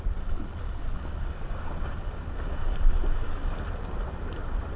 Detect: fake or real real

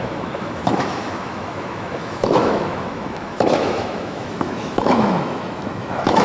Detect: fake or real fake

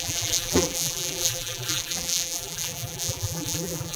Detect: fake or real fake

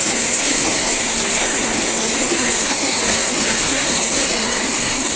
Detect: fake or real fake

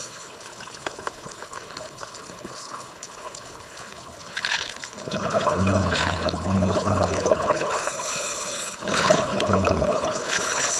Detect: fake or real fake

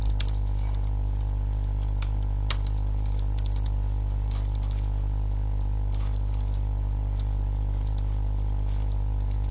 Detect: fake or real real